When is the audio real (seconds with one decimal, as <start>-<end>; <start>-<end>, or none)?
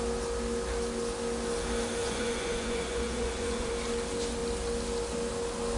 0.0-2.0; 3.7-5.8